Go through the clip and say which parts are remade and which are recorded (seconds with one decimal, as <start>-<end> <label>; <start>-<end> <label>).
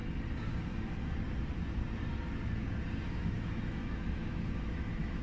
0.0-3.1 recorded; 3.1-5.2 remade